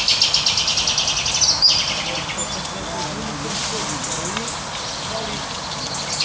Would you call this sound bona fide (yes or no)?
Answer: yes